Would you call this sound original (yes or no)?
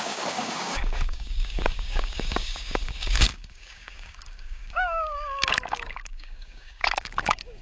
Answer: no